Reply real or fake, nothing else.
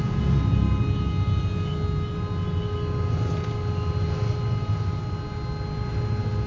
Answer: real